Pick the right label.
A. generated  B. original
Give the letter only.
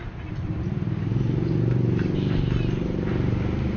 A